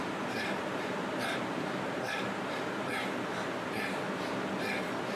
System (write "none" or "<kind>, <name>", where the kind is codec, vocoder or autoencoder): none